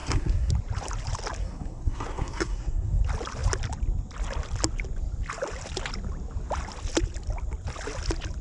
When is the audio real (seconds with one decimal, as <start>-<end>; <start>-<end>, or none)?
0.5-1.4; 3.0-8.4